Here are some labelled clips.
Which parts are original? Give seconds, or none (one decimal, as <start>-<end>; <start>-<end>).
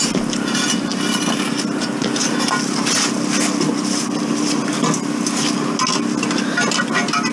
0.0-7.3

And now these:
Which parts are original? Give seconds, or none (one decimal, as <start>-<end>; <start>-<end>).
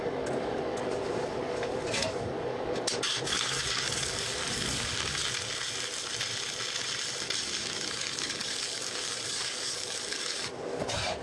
5.2-7.6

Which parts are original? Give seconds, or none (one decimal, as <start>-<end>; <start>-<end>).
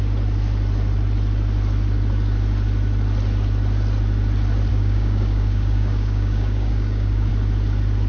0.0-4.7; 7.3-8.1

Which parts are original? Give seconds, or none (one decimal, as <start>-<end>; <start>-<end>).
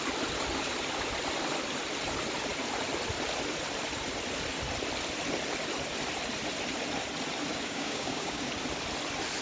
0.0-7.5; 8.5-9.4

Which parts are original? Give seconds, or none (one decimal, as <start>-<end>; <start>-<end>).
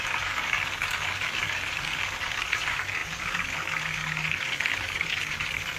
none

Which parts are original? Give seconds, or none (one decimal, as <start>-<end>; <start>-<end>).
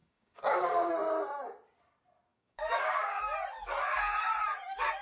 0.9-2.3; 3.2-5.0